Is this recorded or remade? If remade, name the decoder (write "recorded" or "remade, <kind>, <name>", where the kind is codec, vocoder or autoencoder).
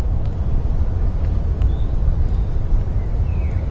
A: remade, vocoder, BigVGAN v2